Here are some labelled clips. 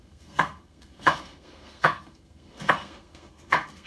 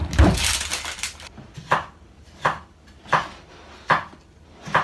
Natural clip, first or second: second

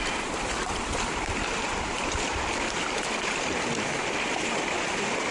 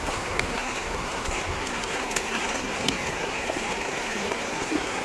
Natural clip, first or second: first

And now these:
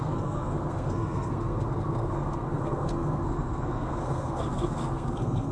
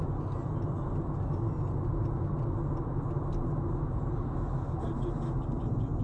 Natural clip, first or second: second